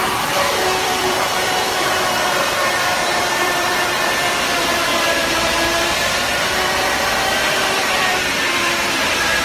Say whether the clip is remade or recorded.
remade